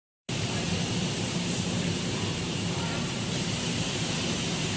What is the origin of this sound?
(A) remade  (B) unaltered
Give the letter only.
A